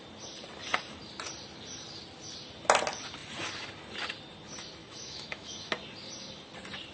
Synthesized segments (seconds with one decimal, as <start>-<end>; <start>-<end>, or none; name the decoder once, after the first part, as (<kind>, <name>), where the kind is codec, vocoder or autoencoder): 4.8-5.7 (autoencoder, DAC-VAE)